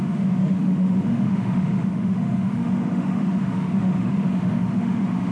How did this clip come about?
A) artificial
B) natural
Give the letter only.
A